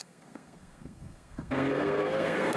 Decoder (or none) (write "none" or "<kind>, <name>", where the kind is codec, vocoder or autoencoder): codec, SNAC